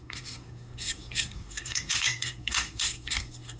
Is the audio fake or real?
fake